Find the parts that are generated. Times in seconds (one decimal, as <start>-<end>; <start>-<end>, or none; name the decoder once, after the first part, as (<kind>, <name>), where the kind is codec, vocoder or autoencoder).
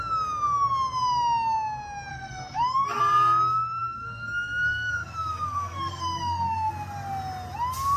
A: 2.1-3.0 (codec, SNAC); 3.8-6.7